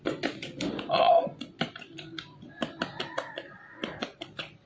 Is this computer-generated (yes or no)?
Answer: no